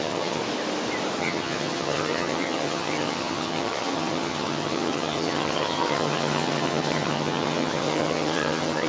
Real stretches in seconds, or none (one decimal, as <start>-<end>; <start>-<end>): 0.4-1.2